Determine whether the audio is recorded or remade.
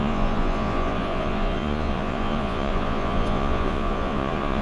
remade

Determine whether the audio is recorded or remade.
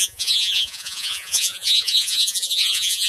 remade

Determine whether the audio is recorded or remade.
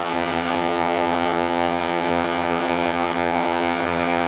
remade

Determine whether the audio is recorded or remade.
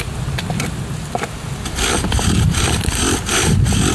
recorded